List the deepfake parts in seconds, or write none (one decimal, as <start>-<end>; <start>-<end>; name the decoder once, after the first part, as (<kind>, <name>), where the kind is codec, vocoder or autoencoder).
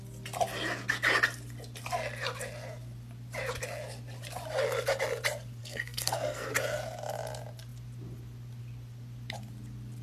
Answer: 5.6-6.5 (codec, SNAC)